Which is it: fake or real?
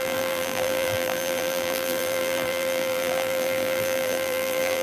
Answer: fake